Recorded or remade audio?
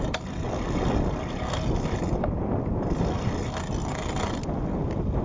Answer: recorded